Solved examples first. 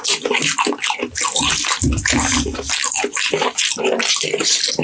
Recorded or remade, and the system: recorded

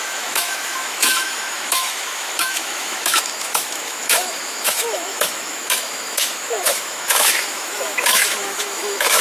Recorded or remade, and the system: remade, autoencoder, DAC-VAE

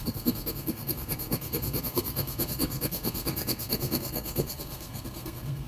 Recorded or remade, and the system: remade, codec, SNAC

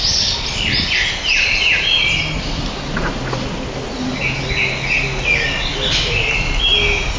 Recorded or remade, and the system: recorded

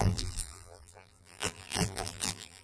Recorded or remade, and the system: remade, vocoder, BigVGAN v2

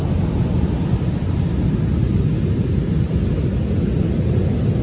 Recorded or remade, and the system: recorded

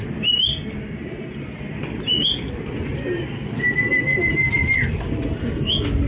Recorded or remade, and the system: recorded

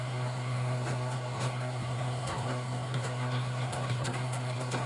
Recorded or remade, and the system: remade, codec, SNAC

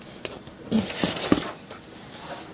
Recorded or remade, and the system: recorded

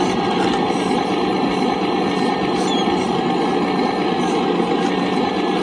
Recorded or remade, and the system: recorded